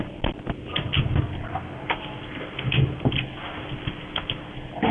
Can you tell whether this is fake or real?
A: real